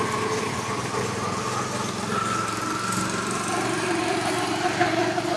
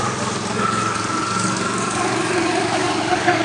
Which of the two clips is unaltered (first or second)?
first